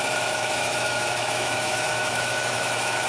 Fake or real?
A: fake